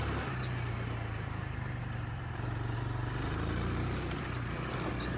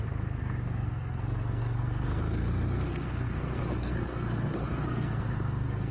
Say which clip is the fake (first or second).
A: second